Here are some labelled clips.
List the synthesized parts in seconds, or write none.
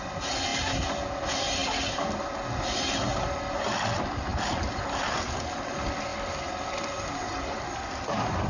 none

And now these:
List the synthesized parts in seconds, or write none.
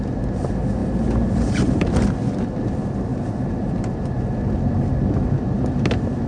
none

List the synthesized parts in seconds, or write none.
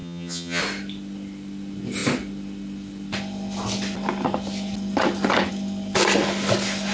0.0-0.6 (vocoder, HiFi-GAN)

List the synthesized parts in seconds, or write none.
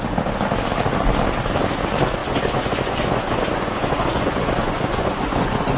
2.2-5.8 (vocoder, Vocos)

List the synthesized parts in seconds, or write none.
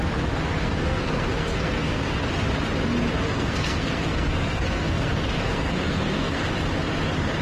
0.6-2.2 (codec, SNAC); 3.1-6.5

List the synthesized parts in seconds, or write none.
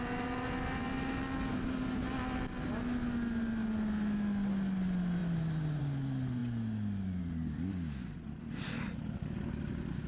none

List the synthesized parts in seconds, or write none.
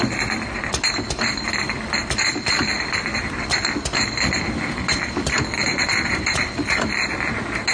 5.7-6.4 (vocoder, BigVGAN v2)